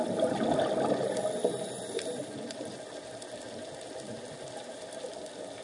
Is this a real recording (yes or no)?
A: yes